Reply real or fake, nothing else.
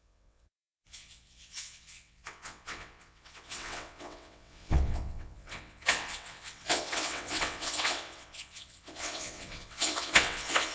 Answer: fake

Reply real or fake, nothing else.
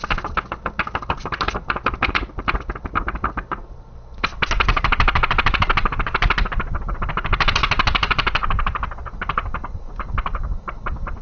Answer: real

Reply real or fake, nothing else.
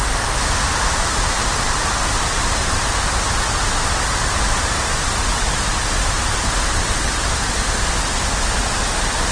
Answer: real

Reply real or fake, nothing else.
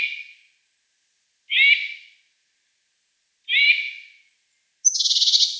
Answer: real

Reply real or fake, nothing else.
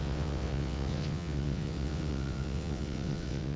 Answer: fake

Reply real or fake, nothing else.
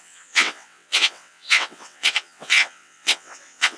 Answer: fake